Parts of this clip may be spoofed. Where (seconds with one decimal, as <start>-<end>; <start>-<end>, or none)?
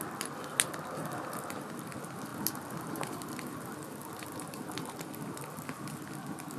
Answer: none